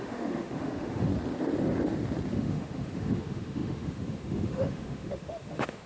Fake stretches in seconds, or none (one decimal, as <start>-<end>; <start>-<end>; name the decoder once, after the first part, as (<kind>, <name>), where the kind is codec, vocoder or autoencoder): 0.0-1.1 (autoencoder, DAC-VAE); 2.3-5.9